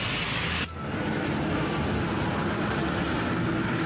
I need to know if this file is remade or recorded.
recorded